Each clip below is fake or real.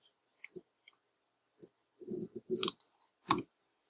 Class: real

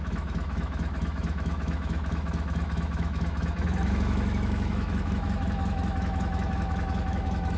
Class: fake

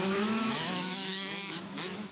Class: fake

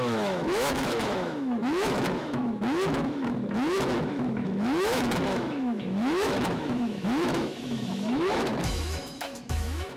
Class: fake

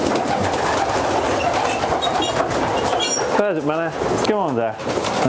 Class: real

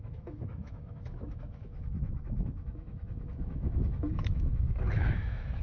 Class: fake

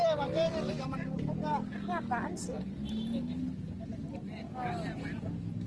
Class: real